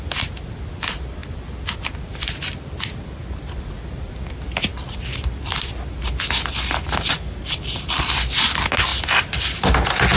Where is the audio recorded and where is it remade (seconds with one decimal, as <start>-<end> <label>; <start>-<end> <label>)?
0.0-1.2 recorded; 1.2-3.6 remade; 3.6-4.7 recorded; 4.7-5.7 remade; 5.7-8.9 recorded; 8.9-9.6 remade; 9.6-10.2 recorded